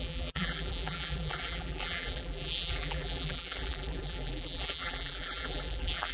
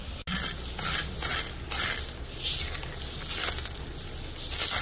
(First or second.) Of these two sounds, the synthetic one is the first